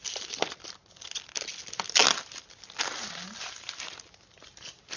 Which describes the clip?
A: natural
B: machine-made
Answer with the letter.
A